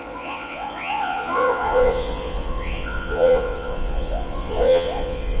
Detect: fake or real fake